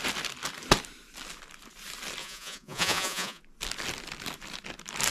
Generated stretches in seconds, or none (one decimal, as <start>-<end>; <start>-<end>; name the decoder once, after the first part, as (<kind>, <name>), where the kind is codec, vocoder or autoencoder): 2.2-3.4 (vocoder, Vocos)

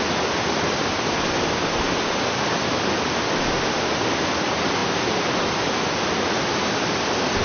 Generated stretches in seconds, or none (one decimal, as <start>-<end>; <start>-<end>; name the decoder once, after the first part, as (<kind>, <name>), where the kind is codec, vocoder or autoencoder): none

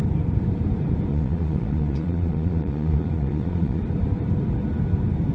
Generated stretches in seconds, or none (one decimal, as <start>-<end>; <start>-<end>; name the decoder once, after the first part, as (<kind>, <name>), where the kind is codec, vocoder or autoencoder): 1.1-3.8 (vocoder, Vocos)

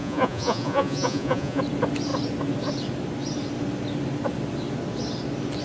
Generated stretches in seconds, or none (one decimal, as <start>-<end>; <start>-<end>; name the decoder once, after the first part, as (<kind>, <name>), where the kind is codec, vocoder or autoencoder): 0.0-1.6 (vocoder, Vocos)

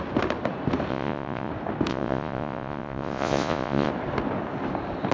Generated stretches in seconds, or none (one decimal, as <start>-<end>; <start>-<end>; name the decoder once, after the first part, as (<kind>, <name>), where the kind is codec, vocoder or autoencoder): 0.9-1.5 (vocoder, Vocos); 1.9-3.9

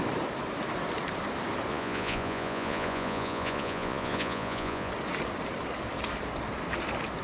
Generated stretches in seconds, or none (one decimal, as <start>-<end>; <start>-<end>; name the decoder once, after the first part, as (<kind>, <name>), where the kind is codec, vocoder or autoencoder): 1.7-4.9 (vocoder, Vocos)

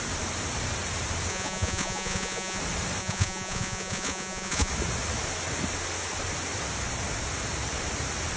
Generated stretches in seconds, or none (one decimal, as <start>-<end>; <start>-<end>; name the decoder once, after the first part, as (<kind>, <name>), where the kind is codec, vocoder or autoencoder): 1.3-2.6 (vocoder, Vocos); 3.0-4.7

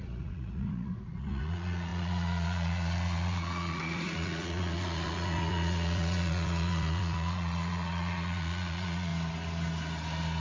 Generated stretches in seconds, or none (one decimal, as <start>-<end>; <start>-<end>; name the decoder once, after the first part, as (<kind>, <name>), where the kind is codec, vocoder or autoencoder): 0.0-9.1 (vocoder, Vocos)